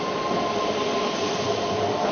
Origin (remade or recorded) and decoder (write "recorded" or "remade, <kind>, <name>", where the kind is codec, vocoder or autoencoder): recorded